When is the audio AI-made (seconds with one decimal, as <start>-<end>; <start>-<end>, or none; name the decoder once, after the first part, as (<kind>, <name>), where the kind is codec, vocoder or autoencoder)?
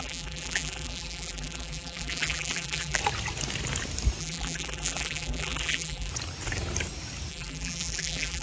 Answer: 0.0-3.0 (vocoder, BigVGAN v2); 4.2-6.1; 7.3-8.4